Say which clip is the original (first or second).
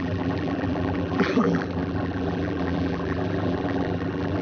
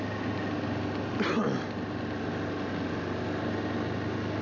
second